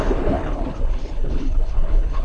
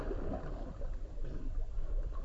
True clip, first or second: second